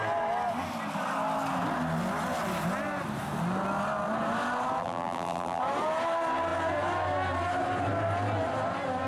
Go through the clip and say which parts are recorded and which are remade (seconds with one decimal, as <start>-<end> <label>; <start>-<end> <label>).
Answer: 0.0-4.8 recorded; 4.8-5.6 remade; 5.6-9.1 recorded